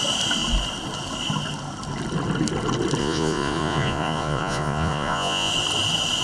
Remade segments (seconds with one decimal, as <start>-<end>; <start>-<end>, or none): 3.0-5.5